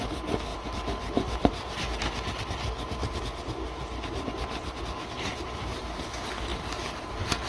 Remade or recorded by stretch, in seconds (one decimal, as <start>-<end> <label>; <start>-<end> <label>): 0.0-5.3 recorded; 5.3-5.8 remade; 5.8-7.5 recorded